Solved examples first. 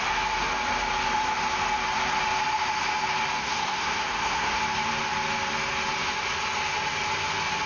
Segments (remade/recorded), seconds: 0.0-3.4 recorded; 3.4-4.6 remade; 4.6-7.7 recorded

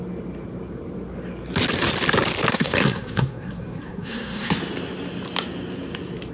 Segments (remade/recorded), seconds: 0.0-2.5 recorded; 2.5-4.5 remade; 4.5-6.3 recorded

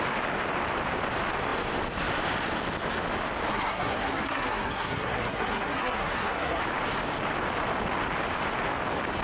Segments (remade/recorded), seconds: 0.0-3.5 recorded; 3.5-6.6 remade; 6.6-9.2 recorded